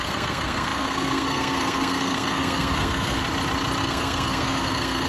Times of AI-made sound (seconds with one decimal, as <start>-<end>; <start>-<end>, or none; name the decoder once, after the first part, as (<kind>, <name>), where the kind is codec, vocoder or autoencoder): 0.0-3.2 (codec, SNAC); 3.8-5.1